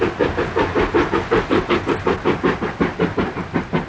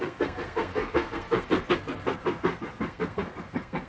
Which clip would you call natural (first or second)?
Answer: first